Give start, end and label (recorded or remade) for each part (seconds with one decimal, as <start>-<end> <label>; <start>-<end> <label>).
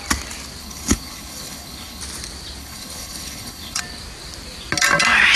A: 0.0-0.6 recorded; 0.6-2.0 remade; 2.0-2.6 recorded; 2.6-3.8 remade; 3.8-5.4 recorded